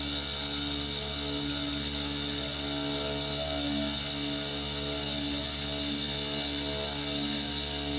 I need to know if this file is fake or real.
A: real